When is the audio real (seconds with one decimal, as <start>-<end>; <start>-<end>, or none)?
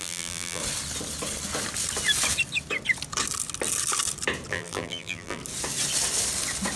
0.6-4.5; 5.4-6.8